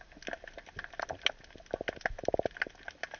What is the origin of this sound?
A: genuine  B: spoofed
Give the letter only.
A